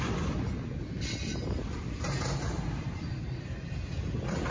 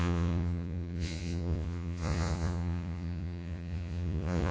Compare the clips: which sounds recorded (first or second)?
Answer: first